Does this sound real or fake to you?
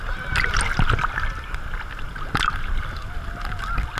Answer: real